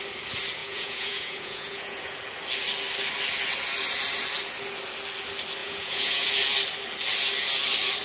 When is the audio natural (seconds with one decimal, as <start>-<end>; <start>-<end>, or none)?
0.0-0.6; 2.2-5.6; 6.3-8.0

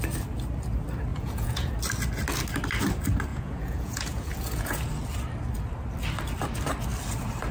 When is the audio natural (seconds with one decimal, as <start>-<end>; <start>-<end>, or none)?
0.0-1.1; 1.7-3.3; 4.8-7.5

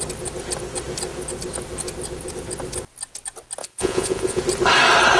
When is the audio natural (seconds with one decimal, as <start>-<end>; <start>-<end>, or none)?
0.0-3.6; 4.4-5.2

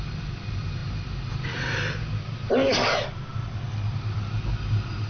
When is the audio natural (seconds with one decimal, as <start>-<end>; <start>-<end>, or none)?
0.0-5.1

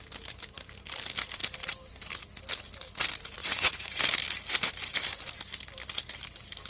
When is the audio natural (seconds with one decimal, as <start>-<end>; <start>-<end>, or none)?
0.0-3.4; 4.0-6.7

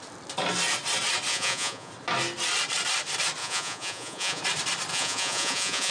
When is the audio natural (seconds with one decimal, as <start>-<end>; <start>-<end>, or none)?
0.0-1.3; 1.9-3.4; 4.4-4.9